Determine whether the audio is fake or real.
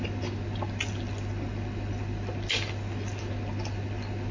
real